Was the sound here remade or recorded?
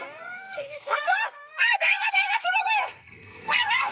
remade